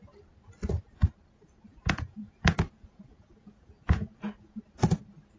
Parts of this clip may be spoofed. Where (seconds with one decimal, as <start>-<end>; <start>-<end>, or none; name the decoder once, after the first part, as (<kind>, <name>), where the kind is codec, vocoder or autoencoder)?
1.7-4.6 (vocoder, Vocos)